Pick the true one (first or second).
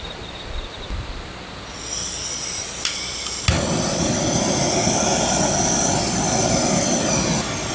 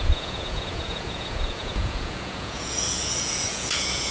first